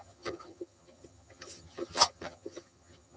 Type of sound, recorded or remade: remade